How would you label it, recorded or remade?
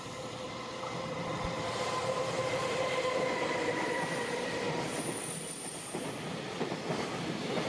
remade